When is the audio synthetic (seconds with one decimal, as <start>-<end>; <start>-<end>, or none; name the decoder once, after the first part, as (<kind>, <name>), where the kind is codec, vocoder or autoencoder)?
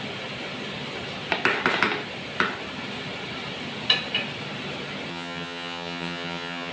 5.1-6.7 (vocoder, HiFi-GAN)